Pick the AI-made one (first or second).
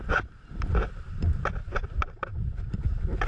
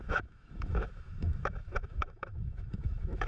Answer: second